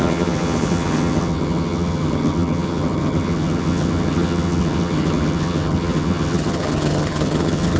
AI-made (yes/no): yes